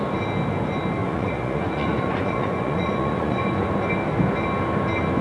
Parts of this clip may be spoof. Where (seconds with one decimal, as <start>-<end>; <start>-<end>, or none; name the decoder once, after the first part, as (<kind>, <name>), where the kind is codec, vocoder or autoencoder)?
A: 1.0-3.7 (vocoder, Vocos)